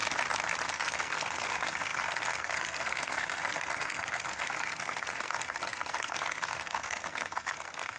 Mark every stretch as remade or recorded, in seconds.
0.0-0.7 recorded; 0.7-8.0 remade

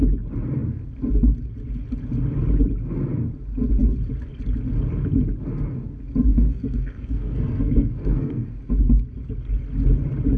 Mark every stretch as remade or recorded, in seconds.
0.0-6.3 recorded; 6.3-8.6 remade; 8.6-10.4 recorded

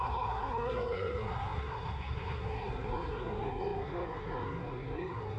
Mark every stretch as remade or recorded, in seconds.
0.0-5.4 remade

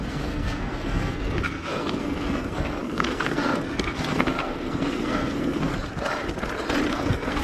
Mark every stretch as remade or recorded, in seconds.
0.0-5.7 remade; 5.7-6.9 recorded; 6.9-7.4 remade

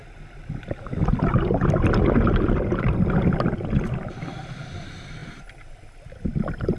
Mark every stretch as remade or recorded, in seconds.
0.0-6.8 recorded

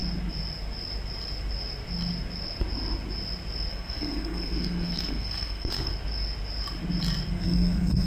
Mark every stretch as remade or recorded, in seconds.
0.0-3.7 recorded; 3.7-5.9 remade; 5.9-7.3 recorded; 7.3-8.1 remade